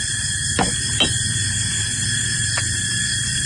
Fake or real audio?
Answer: fake